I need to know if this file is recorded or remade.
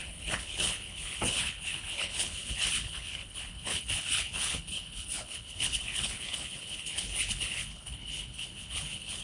remade